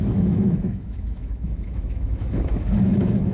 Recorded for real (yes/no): no